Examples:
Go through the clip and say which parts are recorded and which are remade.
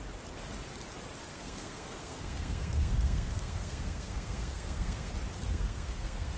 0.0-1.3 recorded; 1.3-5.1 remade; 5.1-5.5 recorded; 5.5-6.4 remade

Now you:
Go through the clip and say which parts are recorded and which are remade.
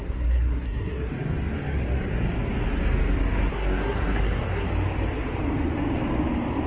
0.0-1.1 remade; 1.1-3.5 recorded; 3.5-4.7 remade; 4.7-6.7 recorded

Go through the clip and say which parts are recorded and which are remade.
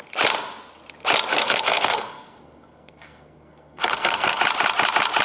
0.0-1.3 recorded; 1.3-4.4 remade; 4.4-5.2 recorded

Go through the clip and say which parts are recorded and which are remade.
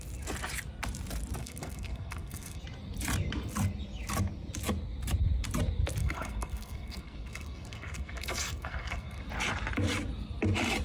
0.0-1.4 recorded; 1.4-2.6 remade; 2.6-6.0 recorded; 6.0-9.2 remade; 9.2-10.8 recorded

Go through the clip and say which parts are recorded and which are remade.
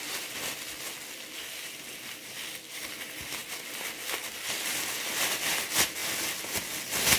0.0-7.2 recorded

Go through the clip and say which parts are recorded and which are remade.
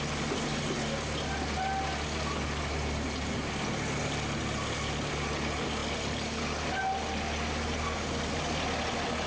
0.0-9.3 recorded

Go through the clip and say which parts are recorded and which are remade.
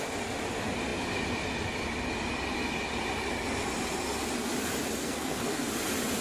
0.0-5.0 recorded; 5.0-5.7 remade; 5.7-6.2 recorded